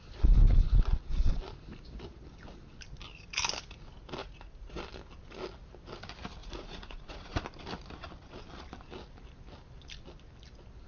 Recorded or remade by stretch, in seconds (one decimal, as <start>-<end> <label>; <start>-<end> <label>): 0.0-4.2 recorded; 4.2-4.8 remade; 4.8-6.4 recorded; 6.4-7.4 remade; 7.4-10.9 recorded